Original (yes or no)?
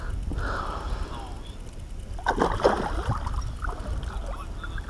yes